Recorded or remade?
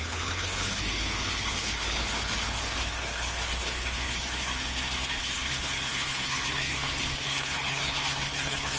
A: remade